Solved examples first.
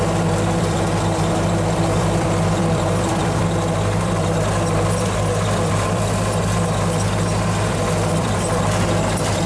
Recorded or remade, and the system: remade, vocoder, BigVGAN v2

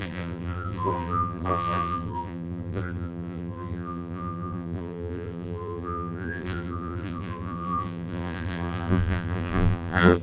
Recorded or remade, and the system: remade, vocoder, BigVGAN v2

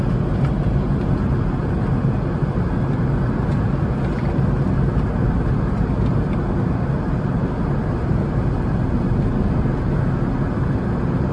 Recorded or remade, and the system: recorded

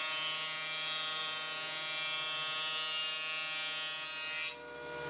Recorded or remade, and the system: recorded